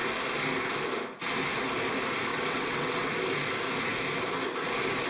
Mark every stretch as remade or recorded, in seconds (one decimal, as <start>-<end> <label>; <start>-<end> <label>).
0.0-2.3 recorded; 2.3-3.1 remade; 3.1-5.1 recorded